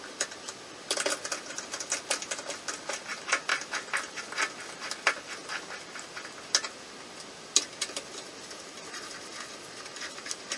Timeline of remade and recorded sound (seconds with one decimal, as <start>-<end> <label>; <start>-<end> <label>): 0.0-10.6 recorded